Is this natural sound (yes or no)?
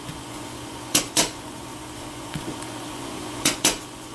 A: no